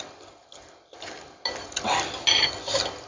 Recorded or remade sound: recorded